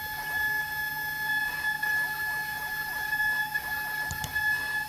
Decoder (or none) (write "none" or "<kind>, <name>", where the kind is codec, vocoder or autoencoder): none